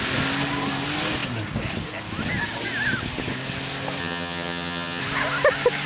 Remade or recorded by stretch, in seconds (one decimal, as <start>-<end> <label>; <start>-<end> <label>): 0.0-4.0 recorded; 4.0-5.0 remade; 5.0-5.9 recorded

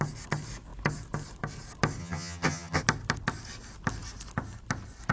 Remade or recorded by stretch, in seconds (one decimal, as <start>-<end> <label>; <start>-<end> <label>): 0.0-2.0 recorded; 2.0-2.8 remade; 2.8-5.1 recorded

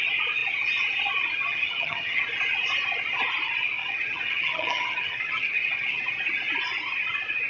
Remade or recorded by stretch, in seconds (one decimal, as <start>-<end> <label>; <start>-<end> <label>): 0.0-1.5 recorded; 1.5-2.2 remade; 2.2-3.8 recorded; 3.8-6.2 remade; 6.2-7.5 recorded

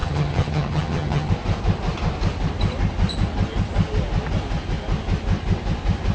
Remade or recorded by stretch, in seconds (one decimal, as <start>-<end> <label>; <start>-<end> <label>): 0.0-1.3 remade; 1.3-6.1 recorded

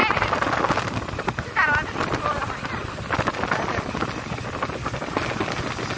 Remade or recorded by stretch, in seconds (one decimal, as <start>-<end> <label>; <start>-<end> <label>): 0.0-6.0 recorded